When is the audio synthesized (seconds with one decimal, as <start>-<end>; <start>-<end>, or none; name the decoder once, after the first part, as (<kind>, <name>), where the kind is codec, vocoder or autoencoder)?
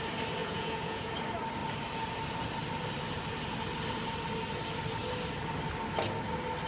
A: 0.4-1.1 (vocoder, Vocos)